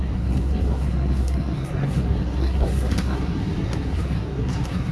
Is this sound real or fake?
fake